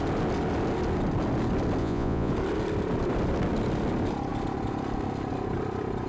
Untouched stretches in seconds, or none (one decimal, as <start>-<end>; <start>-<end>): 0.0-1.8; 2.3-6.1

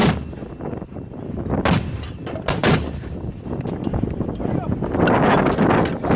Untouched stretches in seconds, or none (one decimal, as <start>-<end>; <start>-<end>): 0.0-6.2